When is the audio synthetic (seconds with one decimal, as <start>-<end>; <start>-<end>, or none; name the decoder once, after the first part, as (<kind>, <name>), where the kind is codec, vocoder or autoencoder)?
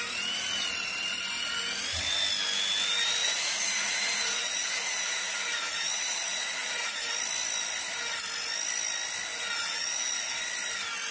3.2-7.1 (vocoder, Vocos); 9.3-10.4